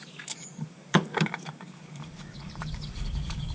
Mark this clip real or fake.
fake